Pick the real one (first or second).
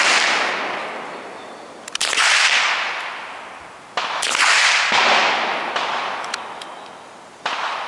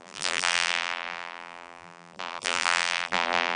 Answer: first